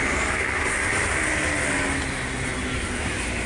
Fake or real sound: real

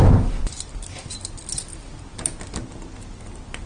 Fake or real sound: real